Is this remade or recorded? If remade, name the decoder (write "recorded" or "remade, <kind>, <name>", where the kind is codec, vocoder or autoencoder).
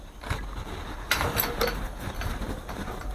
recorded